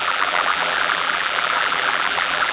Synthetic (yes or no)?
yes